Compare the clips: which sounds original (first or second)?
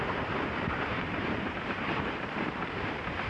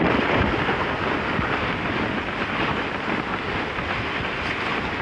second